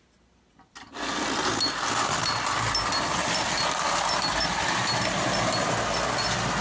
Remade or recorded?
recorded